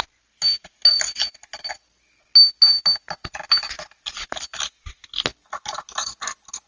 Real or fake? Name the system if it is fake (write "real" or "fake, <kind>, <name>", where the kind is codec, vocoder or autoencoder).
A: real